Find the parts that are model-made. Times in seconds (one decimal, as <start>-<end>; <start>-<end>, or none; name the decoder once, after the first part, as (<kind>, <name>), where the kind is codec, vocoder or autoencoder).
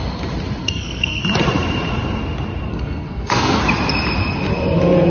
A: 0.6-1.2 (codec, SNAC); 2.7-3.6